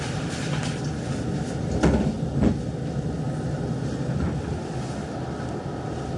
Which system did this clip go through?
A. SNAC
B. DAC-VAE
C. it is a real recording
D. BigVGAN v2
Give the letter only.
C